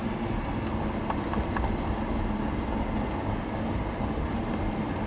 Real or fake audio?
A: real